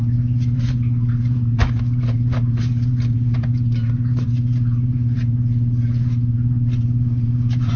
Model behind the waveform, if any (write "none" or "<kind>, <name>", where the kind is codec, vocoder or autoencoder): vocoder, BigVGAN v2